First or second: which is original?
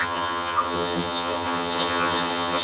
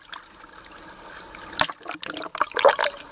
second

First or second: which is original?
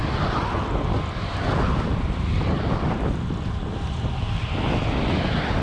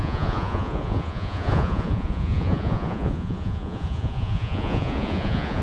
first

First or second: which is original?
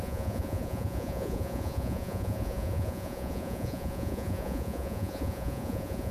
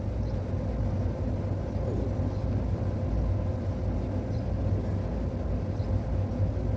second